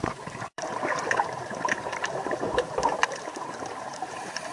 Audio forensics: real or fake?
fake